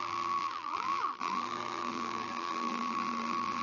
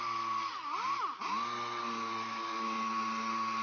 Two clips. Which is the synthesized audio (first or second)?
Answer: first